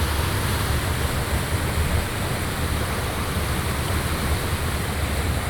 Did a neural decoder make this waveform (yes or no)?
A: no